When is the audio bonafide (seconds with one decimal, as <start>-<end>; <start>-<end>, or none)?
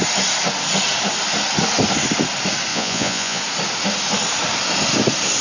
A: 0.0-2.7; 3.4-5.4